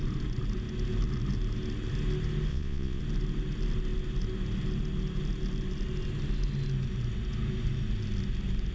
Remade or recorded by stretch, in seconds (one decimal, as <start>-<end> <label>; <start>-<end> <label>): 0.0-2.5 recorded; 2.5-3.0 remade; 3.0-8.7 recorded